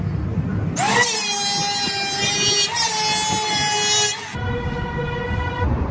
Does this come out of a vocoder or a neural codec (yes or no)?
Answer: no